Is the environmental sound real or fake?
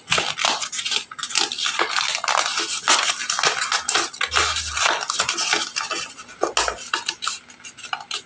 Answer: real